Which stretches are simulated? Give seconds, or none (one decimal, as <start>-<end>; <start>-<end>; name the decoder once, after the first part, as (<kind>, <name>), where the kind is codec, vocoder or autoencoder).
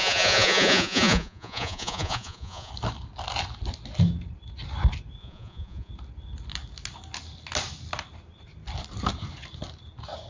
0.0-2.7 (vocoder, Vocos); 5.2-5.9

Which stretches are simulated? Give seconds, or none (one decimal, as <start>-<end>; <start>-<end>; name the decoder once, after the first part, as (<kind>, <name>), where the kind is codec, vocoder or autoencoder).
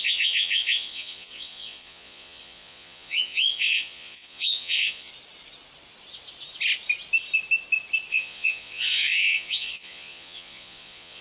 0.0-5.1 (vocoder, Vocos); 8.1-11.2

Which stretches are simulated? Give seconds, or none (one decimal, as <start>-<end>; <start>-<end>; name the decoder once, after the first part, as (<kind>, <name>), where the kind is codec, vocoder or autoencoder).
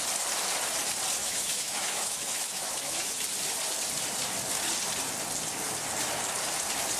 1.2-3.2 (autoencoder, DAC-VAE)